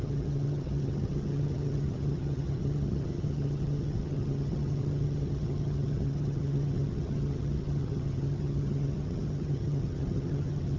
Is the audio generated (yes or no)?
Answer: yes